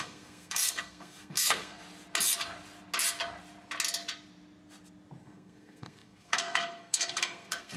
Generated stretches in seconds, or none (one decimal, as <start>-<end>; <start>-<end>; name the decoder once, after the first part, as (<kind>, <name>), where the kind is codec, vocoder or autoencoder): 0.0-1.8 (codec, SNAC); 5.2-7.8